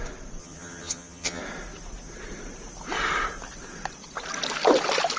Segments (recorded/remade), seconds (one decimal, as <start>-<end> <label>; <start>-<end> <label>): 0.0-0.4 recorded; 0.4-1.4 remade; 1.4-5.2 recorded